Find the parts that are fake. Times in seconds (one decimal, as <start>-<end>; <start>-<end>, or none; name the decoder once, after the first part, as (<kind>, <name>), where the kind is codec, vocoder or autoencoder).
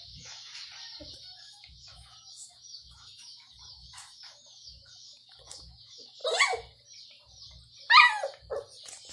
0.0-0.6 (autoencoder, DAC-VAE); 1.1-6.2